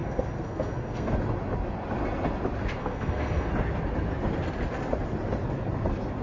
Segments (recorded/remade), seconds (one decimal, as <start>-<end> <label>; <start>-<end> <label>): 0.0-1.1 remade; 1.1-2.8 recorded; 2.8-3.5 remade; 3.5-6.2 recorded